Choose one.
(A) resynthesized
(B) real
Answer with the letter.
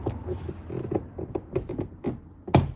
B